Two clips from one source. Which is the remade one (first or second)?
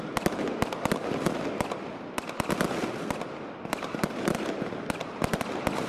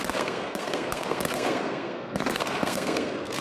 second